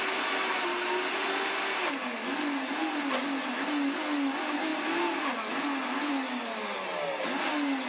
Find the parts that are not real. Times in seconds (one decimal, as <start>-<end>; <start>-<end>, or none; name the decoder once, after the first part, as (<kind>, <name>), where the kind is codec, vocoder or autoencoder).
none